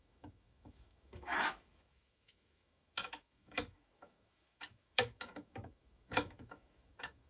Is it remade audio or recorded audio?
remade